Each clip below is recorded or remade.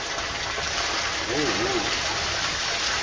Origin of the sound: recorded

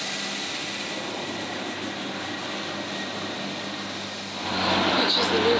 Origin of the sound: recorded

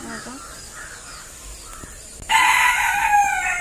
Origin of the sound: recorded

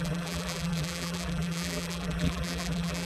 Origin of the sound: remade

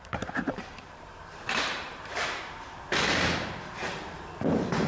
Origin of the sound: remade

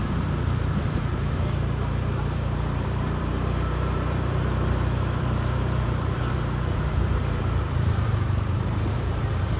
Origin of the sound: remade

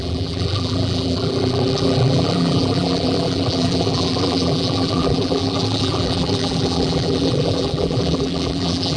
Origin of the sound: remade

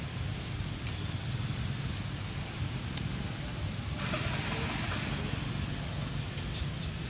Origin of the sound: recorded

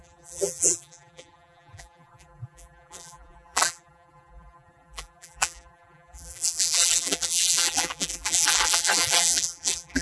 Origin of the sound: remade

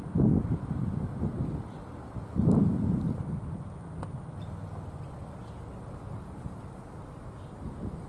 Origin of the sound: recorded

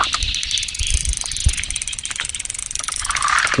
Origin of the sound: recorded